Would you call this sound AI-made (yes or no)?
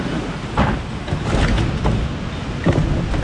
no